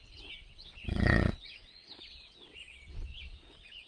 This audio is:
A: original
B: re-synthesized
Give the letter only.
B